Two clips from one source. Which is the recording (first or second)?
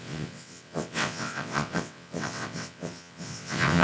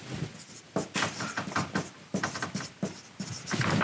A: second